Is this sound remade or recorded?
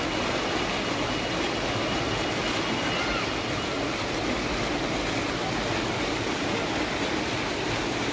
recorded